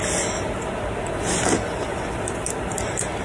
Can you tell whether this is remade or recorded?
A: recorded